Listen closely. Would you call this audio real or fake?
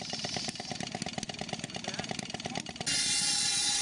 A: real